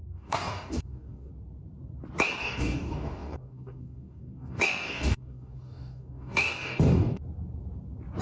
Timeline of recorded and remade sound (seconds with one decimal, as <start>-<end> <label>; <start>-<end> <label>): 0.0-1.3 remade; 1.3-2.4 recorded; 2.4-7.2 remade; 7.2-8.2 recorded